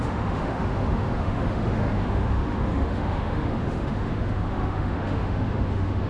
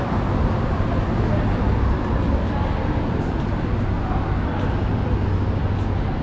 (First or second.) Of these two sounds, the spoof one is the first